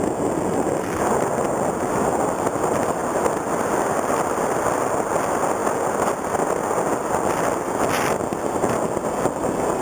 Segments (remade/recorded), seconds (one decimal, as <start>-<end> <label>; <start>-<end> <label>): 0.0-9.8 recorded